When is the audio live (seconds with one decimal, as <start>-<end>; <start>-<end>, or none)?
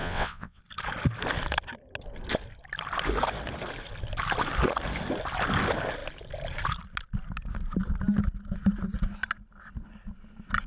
0.6-10.7